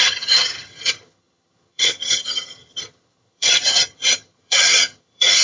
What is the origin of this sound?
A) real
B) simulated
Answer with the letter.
B